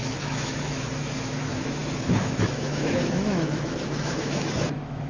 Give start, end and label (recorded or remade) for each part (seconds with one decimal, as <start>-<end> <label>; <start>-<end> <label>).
0.0-5.1 remade